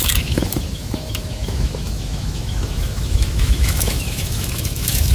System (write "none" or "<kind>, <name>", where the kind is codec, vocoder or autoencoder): autoencoder, DAC-VAE